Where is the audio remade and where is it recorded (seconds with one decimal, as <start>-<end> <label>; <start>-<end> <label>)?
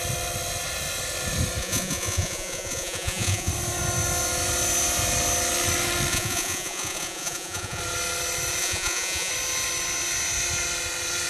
0.0-1.6 recorded; 1.6-3.5 remade; 3.5-6.1 recorded; 6.1-7.8 remade; 7.8-8.6 recorded; 8.6-9.3 remade; 9.3-11.3 recorded